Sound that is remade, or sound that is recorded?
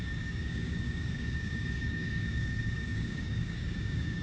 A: remade